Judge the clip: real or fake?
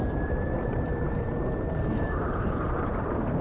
fake